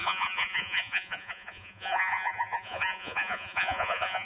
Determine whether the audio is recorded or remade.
remade